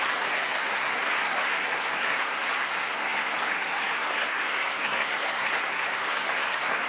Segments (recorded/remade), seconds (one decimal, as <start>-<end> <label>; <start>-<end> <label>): 0.0-6.9 remade